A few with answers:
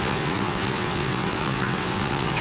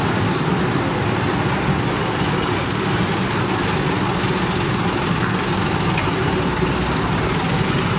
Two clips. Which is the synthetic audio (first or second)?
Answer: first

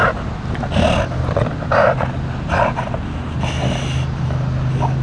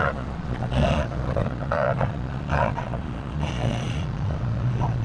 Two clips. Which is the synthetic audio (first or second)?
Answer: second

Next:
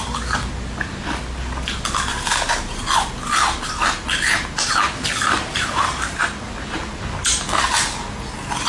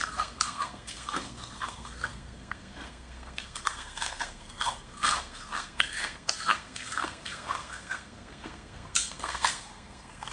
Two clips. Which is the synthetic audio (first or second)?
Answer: second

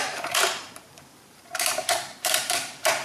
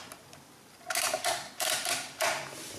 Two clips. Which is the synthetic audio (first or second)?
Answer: first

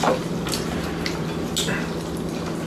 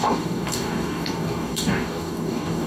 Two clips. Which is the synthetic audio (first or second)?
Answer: second